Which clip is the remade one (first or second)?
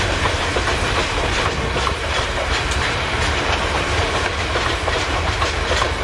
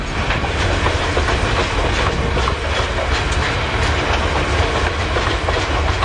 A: first